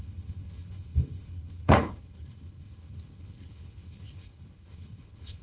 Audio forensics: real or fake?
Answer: fake